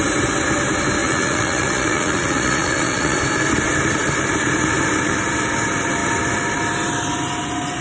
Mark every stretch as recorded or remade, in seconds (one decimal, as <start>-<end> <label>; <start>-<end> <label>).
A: 0.0-1.0 recorded; 1.0-3.2 remade; 3.2-7.8 recorded